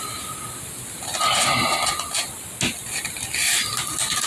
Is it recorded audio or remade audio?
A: recorded